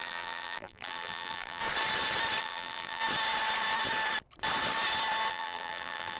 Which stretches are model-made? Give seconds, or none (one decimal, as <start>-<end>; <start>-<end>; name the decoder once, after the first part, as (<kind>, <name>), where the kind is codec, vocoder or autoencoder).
0.0-1.6 (vocoder, BigVGAN v2); 2.4-3.0; 5.3-6.2